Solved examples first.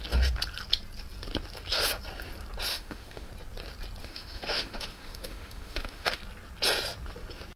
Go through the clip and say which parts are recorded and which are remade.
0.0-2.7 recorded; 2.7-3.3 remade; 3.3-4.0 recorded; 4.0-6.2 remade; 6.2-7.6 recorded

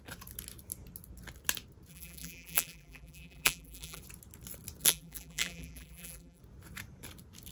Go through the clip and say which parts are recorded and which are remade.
0.0-1.9 recorded; 1.9-4.0 remade; 4.0-4.8 recorded; 4.8-6.4 remade; 6.4-7.5 recorded

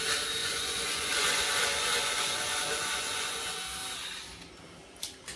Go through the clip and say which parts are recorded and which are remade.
0.0-0.4 recorded; 0.4-3.6 remade; 3.6-5.4 recorded

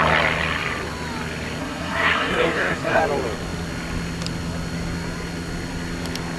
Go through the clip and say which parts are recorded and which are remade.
0.0-1.6 recorded; 1.6-3.0 remade; 3.0-6.4 recorded